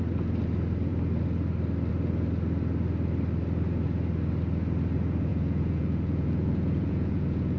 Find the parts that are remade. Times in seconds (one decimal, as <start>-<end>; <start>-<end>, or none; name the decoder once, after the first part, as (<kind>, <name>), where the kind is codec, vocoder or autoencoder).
5.3-7.6 (vocoder, Vocos)